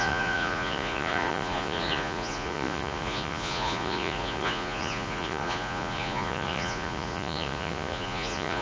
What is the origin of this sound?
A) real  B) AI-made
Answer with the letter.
B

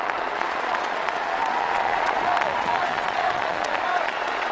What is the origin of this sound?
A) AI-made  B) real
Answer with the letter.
A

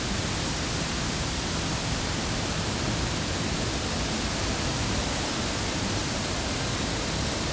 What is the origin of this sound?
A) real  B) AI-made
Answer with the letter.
A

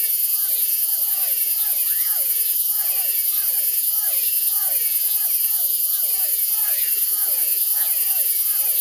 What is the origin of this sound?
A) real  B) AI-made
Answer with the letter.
B